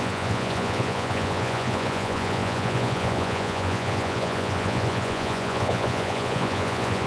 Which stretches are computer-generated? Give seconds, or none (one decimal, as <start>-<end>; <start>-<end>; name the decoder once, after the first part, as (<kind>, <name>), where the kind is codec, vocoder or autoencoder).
0.0-7.1 (vocoder, Vocos)